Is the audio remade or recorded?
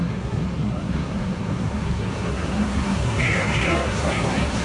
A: remade